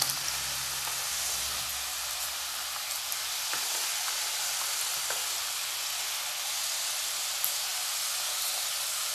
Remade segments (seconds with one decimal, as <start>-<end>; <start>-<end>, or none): none